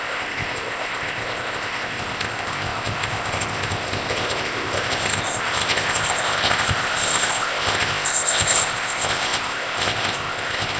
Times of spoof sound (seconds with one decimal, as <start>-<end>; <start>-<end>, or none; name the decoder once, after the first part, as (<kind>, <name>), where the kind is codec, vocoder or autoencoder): 0.0-10.8 (codec, ZipCodec)